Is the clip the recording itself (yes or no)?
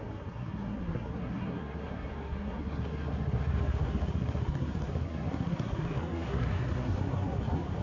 no